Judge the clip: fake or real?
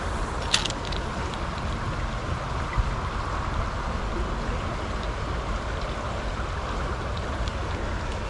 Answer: real